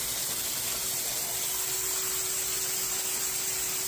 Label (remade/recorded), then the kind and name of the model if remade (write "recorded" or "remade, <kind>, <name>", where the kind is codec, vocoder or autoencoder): recorded